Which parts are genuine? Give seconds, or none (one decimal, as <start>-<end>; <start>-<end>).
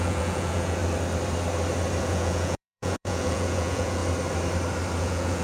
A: 0.8-2.0; 4.0-5.0